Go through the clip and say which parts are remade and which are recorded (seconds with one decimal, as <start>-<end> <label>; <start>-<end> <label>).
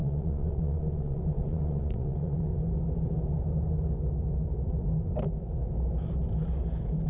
0.0-2.5 remade; 2.5-7.1 recorded